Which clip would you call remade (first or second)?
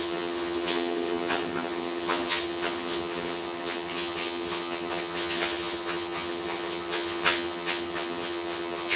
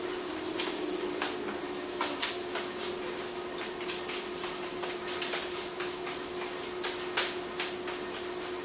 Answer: first